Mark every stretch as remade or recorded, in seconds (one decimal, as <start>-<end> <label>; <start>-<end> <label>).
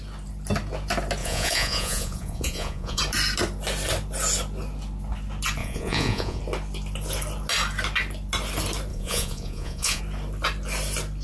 0.0-1.2 recorded; 1.2-3.0 remade; 3.0-5.6 recorded; 5.6-6.4 remade; 6.4-8.9 recorded; 8.9-10.0 remade; 10.0-11.2 recorded